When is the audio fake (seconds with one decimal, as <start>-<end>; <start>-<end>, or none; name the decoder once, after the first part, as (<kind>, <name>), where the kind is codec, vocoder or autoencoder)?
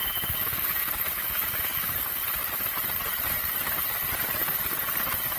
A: 0.0-2.0 (autoencoder, DAC-VAE)